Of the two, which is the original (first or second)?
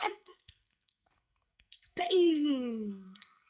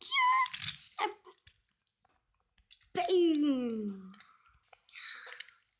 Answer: second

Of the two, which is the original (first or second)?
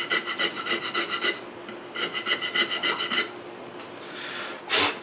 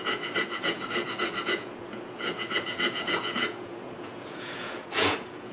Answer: first